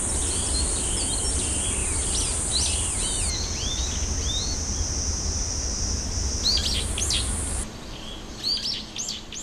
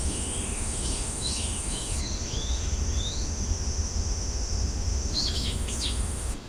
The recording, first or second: first